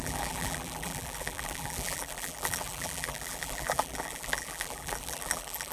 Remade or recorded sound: remade